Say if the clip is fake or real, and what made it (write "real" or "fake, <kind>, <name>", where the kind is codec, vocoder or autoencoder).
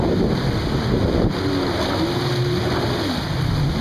real